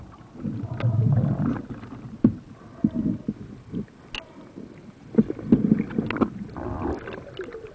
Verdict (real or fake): real